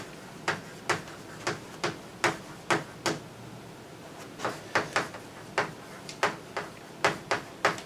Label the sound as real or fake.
real